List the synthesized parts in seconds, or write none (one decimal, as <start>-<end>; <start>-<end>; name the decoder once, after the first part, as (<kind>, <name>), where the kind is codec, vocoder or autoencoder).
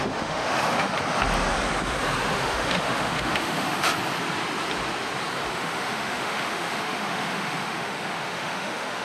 0.0-0.9 (autoencoder, DAC-VAE); 2.3-3.9; 5.5-9.0